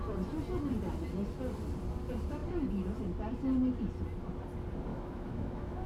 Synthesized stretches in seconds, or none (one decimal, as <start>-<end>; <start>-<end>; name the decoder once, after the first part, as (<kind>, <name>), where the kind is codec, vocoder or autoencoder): 4.9-5.9 (autoencoder, DAC-VAE)